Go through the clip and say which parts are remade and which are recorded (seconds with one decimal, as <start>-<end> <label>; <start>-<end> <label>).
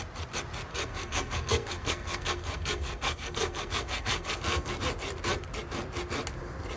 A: 0.0-0.7 recorded; 0.7-4.8 remade; 4.8-6.8 recorded